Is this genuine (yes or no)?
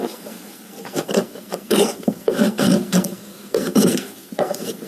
no